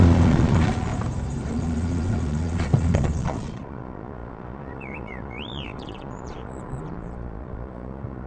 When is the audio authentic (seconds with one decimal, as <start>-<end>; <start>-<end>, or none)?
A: 0.9-1.5